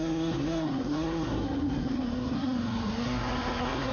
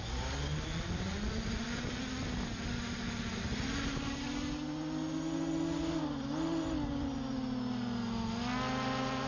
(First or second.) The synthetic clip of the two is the first